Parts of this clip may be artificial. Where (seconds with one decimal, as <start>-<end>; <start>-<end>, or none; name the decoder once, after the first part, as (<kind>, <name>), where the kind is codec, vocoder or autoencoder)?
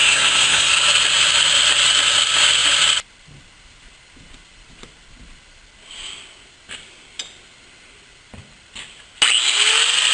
0.0-0.7 (codec, SNAC)